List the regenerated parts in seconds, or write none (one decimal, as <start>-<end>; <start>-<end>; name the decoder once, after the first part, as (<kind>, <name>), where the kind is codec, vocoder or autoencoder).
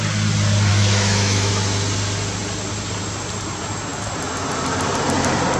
0.7-1.5 (autoencoder, DAC-VAE)